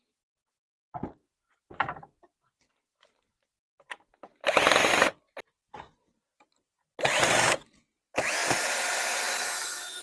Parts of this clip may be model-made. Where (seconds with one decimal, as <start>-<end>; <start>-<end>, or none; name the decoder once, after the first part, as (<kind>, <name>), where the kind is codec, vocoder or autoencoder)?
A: none